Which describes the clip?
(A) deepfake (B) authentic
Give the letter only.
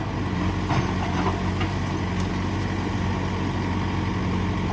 B